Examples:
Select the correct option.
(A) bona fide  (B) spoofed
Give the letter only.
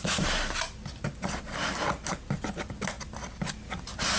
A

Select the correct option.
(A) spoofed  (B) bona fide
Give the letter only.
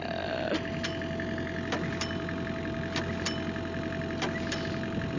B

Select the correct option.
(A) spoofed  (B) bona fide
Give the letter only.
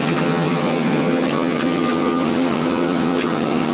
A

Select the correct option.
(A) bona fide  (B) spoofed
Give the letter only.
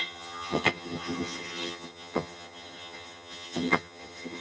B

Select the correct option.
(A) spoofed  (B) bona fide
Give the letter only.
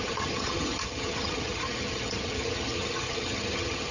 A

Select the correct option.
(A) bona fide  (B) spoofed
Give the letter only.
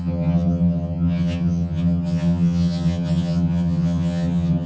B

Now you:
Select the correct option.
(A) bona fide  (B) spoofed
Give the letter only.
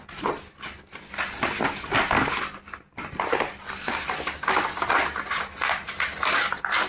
A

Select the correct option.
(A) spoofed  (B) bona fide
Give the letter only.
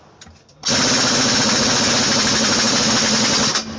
B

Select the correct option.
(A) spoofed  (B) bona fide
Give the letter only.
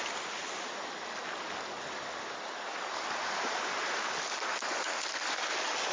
B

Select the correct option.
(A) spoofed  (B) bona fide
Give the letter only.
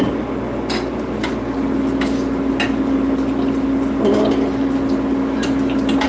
B